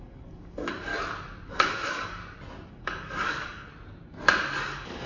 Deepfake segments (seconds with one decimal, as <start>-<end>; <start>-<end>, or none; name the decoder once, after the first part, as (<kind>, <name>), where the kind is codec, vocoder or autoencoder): 0.0-0.9 (codec, DAC); 1.5-2.2; 2.7-3.7; 4.6-5.1